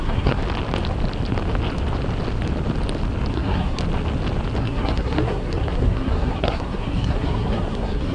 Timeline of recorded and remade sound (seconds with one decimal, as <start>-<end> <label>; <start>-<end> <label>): 0.0-0.4 remade; 0.4-3.3 recorded; 3.3-3.8 remade; 3.8-4.6 recorded; 4.6-8.1 remade